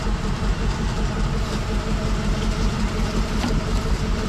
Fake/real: fake